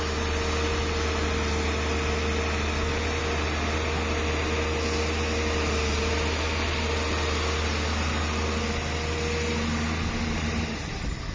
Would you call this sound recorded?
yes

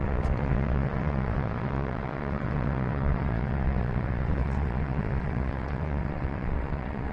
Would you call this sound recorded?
no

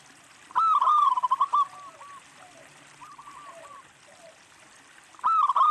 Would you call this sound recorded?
yes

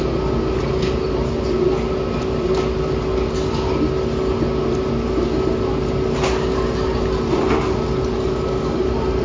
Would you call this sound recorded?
yes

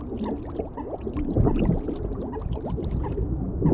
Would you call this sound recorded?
yes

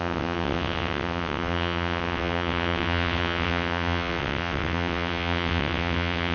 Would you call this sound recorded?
no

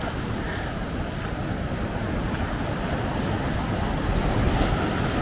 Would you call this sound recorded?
yes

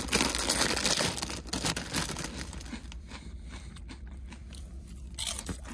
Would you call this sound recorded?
yes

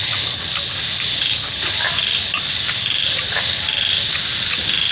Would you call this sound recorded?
yes